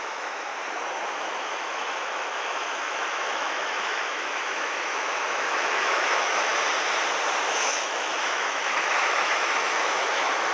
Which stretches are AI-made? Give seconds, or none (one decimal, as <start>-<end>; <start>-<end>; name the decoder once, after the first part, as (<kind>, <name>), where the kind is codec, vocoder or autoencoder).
0.0-0.5 (autoencoder, DAC-VAE); 1.2-6.5; 7.5-10.5